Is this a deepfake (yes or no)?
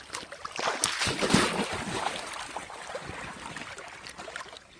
no